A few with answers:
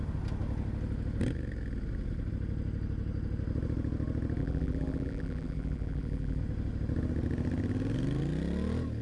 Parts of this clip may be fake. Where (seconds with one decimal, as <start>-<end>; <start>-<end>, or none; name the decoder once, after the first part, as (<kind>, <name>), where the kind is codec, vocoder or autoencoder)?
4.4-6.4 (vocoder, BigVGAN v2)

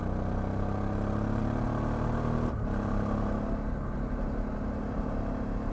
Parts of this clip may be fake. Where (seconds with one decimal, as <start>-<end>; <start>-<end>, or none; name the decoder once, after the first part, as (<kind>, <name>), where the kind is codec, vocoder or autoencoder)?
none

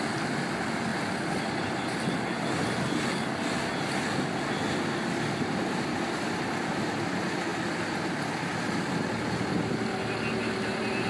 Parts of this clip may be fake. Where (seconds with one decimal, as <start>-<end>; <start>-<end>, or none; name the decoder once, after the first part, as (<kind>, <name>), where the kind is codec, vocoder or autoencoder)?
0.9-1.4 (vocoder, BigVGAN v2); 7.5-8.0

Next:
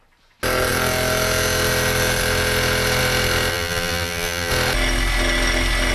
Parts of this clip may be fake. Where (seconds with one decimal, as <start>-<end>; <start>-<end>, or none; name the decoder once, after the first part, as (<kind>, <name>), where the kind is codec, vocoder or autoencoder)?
3.5-4.5 (vocoder, BigVGAN v2)